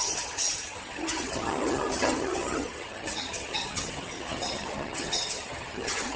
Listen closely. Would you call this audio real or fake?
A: fake